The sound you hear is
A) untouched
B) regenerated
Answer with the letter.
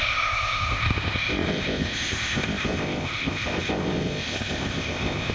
B